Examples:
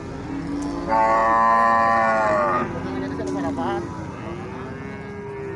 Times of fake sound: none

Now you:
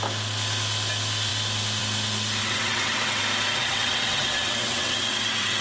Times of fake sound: 2.4-3.2 (vocoder, WaveNeXt); 3.6-5.6